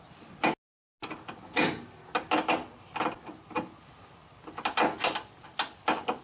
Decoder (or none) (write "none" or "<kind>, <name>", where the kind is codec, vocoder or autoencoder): none